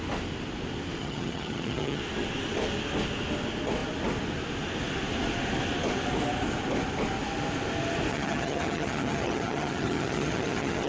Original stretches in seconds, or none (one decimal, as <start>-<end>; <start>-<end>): 0.0-1.0; 2.0-8.1

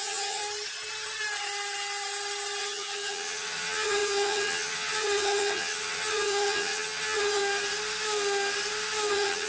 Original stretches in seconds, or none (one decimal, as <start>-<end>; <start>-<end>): 0.4-2.6; 7.4-9.1

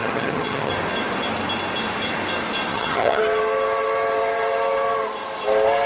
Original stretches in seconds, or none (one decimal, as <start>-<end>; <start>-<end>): 0.7-2.7; 3.2-5.9

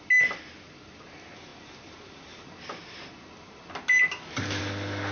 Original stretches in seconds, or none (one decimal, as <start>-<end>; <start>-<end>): 0.0-5.1